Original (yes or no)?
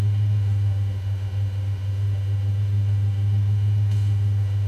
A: no